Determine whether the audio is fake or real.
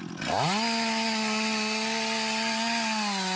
real